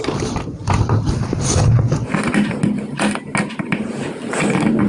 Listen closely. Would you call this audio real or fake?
real